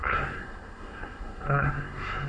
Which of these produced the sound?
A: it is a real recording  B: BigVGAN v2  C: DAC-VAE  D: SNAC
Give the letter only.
D